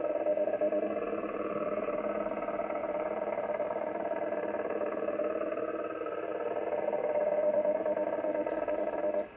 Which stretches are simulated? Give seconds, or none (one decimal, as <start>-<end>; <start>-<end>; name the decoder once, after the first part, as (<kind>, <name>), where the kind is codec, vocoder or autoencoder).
2.8-3.9 (vocoder, BigVGAN v2); 7.2-8.6